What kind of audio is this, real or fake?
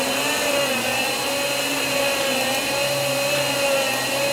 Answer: real